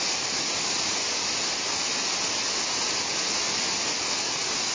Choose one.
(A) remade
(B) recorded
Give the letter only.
B